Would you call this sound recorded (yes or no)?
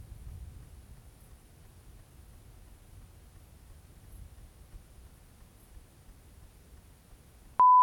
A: yes